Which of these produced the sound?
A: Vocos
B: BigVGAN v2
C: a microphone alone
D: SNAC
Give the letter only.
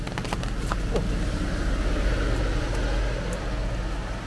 C